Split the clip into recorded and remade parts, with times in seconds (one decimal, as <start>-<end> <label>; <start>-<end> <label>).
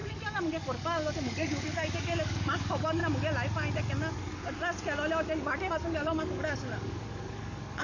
0.0-3.0 remade; 3.0-5.7 recorded; 5.7-7.8 remade